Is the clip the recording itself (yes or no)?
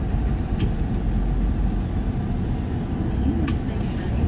yes